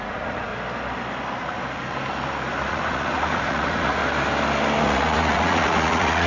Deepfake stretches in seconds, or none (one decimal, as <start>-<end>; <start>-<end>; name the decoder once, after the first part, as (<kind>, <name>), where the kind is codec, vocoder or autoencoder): 0.0-0.5 (vocoder, Vocos); 2.7-4.0; 4.8-6.3